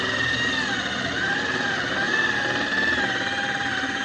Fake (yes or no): no